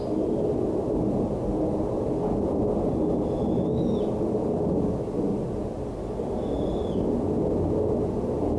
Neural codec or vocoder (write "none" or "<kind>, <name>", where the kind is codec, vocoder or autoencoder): none